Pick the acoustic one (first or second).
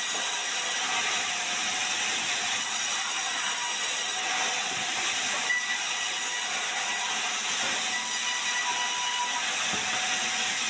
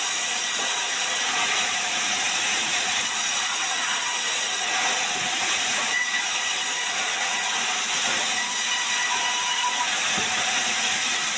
first